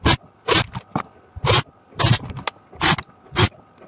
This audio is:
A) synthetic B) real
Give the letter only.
B